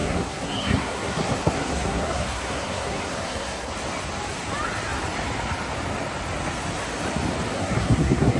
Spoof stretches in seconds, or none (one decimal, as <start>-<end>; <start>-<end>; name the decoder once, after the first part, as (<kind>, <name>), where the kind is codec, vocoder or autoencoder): 0.0-3.7 (codec, SNAC); 7.5-8.4